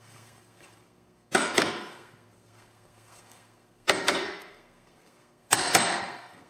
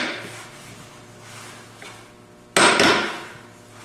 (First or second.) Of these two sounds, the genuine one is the second